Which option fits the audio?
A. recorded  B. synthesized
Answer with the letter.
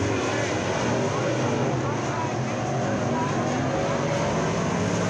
A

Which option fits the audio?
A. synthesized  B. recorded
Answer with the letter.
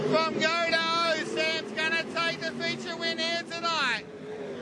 B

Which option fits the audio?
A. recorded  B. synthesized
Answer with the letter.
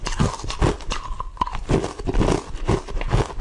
A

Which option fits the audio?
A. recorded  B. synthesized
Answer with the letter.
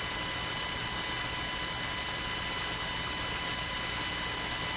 A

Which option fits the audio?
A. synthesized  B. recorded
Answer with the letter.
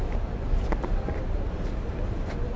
B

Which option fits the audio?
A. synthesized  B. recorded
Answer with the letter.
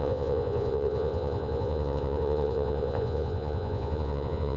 A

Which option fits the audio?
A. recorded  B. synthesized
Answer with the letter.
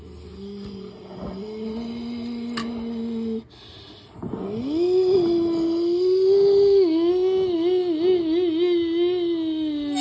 A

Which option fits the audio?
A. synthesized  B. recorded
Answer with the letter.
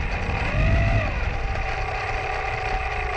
B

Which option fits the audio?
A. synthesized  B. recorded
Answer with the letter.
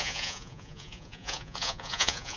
A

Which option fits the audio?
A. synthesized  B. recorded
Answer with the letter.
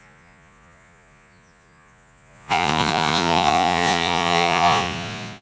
A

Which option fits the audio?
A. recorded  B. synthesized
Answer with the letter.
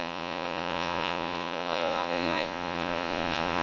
B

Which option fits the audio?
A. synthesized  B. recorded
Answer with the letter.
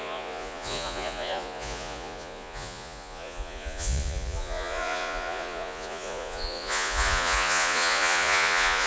A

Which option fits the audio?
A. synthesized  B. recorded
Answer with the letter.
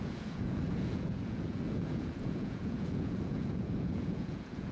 A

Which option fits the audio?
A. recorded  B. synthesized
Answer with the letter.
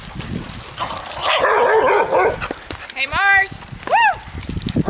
A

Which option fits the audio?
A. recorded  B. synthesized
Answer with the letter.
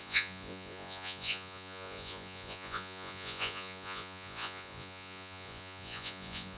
B